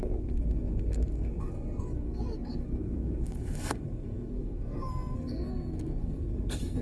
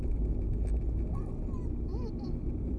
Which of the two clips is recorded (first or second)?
second